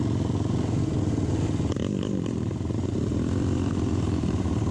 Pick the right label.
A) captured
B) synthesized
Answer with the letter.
A